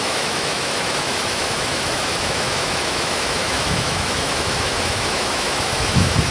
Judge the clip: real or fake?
fake